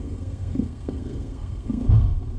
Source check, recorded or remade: remade